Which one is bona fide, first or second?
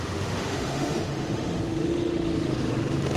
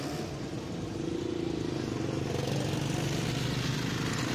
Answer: second